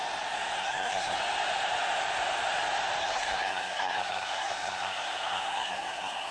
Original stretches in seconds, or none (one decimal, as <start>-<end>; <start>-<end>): 0.0-0.6; 1.2-3.0